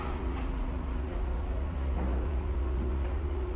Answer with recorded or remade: remade